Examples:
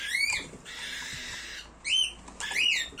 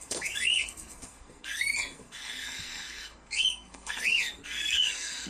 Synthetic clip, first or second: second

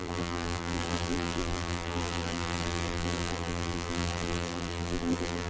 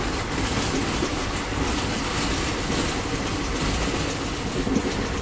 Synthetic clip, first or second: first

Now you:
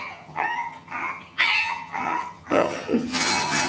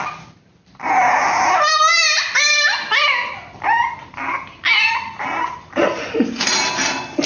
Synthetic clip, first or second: first